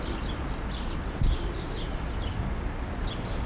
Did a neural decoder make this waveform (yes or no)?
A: no